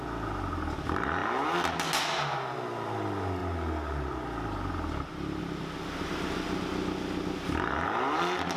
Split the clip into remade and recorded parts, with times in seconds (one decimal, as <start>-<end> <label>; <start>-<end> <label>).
0.0-8.6 recorded